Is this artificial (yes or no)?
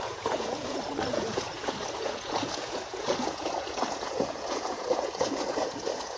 yes